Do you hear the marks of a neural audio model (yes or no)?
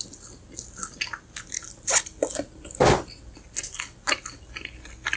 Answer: no